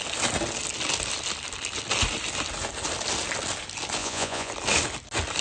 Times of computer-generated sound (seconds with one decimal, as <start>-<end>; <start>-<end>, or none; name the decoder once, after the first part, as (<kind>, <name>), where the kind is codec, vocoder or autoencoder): 4.0-4.5 (vocoder, Vocos)